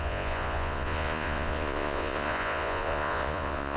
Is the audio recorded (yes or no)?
no